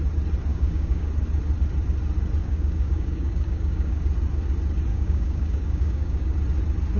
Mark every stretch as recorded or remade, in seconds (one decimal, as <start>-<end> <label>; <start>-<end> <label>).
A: 0.0-0.5 recorded; 0.5-1.1 remade; 1.1-2.4 recorded; 2.4-4.0 remade; 4.0-4.9 recorded; 4.9-6.3 remade; 6.3-7.0 recorded